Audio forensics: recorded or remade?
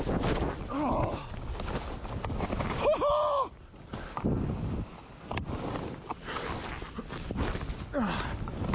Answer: recorded